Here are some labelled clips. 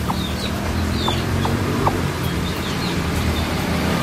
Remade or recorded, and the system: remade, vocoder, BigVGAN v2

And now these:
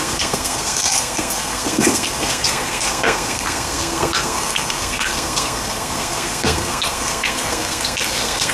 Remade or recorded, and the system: remade, codec, SNAC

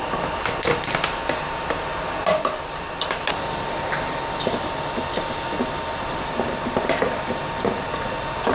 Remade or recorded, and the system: recorded